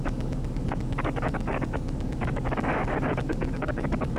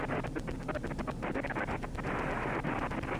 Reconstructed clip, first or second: first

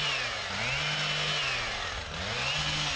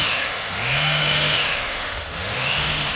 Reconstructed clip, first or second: second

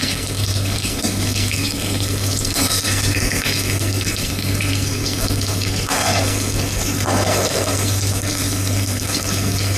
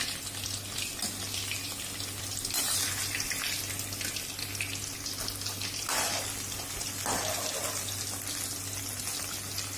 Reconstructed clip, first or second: first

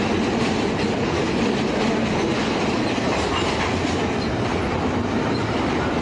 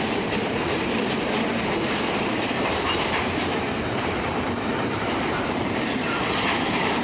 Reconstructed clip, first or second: second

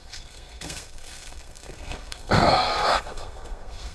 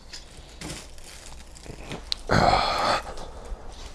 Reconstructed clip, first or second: first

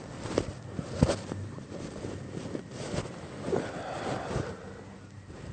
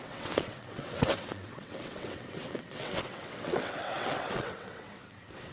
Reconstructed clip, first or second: second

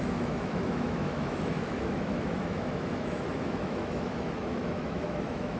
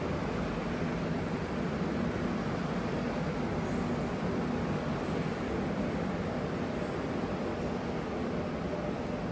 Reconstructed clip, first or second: first